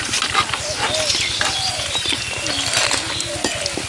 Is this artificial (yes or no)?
no